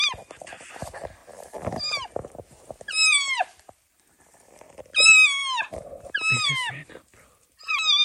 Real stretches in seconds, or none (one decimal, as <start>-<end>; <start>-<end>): 0.0-0.7; 1.2-2.8; 5.4-6.7